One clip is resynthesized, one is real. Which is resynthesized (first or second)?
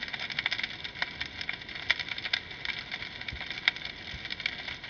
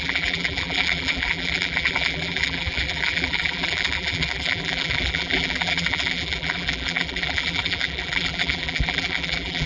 second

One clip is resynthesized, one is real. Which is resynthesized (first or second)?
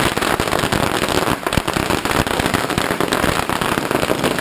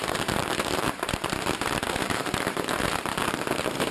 second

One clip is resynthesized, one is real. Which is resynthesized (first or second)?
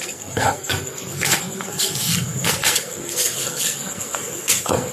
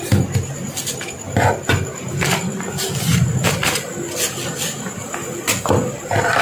first